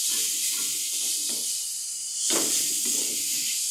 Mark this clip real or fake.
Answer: real